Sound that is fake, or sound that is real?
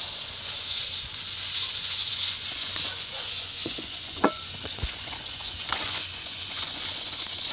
fake